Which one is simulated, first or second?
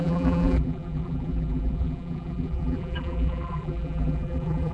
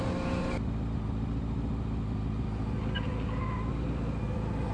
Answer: first